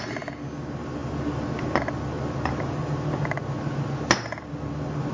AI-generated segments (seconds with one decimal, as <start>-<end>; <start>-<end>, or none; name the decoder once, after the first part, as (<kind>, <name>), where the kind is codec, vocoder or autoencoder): none